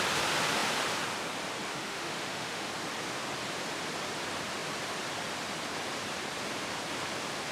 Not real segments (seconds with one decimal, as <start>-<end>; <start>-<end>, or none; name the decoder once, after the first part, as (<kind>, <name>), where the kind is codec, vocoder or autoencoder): 1.7-2.7 (autoencoder, DAC-VAE)